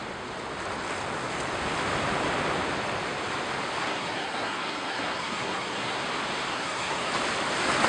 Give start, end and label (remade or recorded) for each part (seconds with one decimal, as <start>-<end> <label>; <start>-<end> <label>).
0.0-3.8 recorded; 3.8-6.0 remade; 6.0-6.5 recorded; 6.5-7.1 remade; 7.1-7.9 recorded